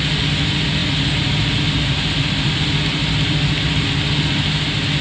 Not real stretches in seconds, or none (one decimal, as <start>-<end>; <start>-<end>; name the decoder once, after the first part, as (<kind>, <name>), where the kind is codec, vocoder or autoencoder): none